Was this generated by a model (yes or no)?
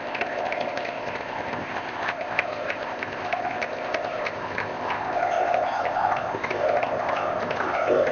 yes